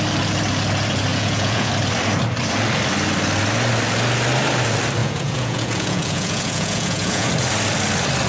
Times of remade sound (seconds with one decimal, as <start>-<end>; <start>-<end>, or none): 1.1-1.7; 5.0-7.3